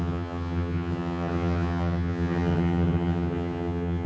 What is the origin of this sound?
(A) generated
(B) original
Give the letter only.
A